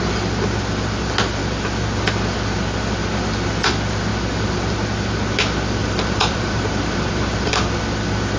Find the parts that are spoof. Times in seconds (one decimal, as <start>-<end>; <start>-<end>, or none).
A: 5.8-7.7